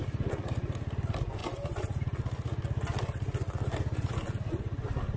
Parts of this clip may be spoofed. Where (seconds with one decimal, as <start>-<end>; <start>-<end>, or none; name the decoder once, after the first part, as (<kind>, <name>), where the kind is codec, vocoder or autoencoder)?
none